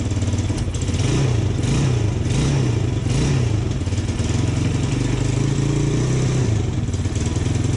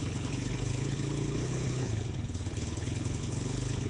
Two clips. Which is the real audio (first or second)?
first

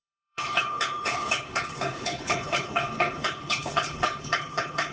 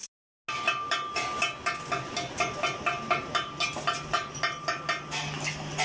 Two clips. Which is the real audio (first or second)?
second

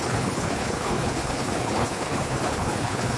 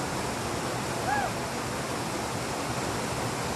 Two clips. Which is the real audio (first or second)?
second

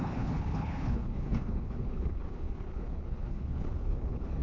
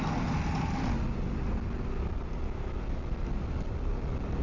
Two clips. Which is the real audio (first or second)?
second